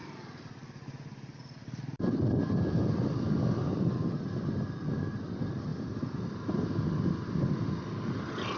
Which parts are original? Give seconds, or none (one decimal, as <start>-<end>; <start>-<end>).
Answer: 0.0-8.6